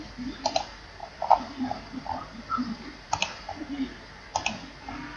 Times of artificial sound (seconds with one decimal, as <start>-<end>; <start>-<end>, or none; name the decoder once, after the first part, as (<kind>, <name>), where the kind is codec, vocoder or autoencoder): 1.0-4.1 (vocoder, BigVGAN v2)